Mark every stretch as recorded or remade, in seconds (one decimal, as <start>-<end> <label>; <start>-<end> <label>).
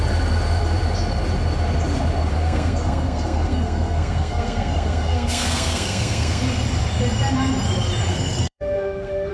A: 0.0-2.3 recorded; 2.3-6.4 remade; 6.4-8.1 recorded; 8.1-9.3 remade